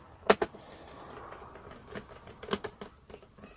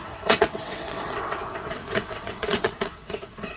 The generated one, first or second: second